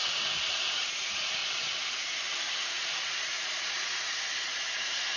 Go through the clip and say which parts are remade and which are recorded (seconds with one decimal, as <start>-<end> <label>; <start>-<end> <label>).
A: 0.0-0.5 recorded; 0.5-1.4 remade; 1.4-2.6 recorded; 2.6-5.2 remade